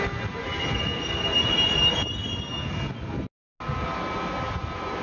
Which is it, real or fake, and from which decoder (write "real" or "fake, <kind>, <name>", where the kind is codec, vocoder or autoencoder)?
real